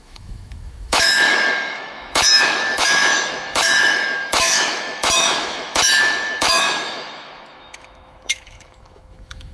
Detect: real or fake fake